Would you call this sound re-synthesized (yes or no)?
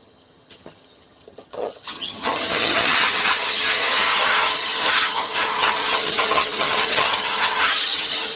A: yes